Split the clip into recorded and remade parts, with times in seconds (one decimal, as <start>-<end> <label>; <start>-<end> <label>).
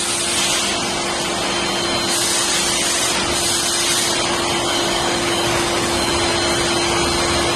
0.0-4.7 recorded; 4.7-6.1 remade; 6.1-7.6 recorded